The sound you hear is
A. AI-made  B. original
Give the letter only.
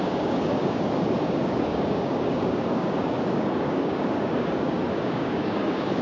A